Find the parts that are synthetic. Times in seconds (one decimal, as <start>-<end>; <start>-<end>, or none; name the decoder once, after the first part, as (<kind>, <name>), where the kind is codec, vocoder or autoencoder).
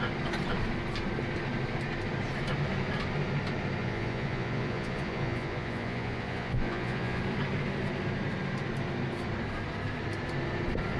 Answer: 3.8-7.2 (vocoder, Vocos)